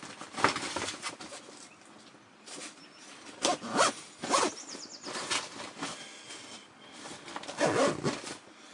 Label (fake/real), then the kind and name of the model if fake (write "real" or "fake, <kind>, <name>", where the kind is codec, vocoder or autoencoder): real